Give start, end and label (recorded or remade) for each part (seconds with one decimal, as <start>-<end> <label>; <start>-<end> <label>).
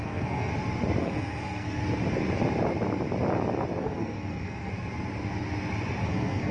0.0-0.5 remade; 0.5-1.0 recorded; 1.0-1.8 remade; 1.8-3.8 recorded; 3.8-4.7 remade; 4.7-6.0 recorded; 6.0-6.5 remade